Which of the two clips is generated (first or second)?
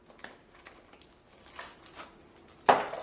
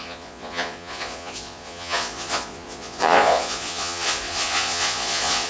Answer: second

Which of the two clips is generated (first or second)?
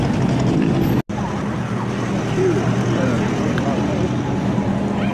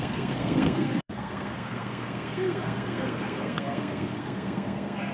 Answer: second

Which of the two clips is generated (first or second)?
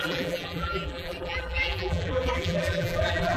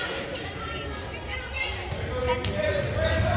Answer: first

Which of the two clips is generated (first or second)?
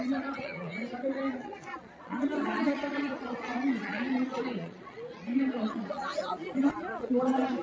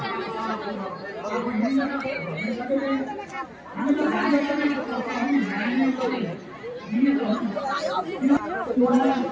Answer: first